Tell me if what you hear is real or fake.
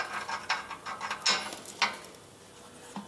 real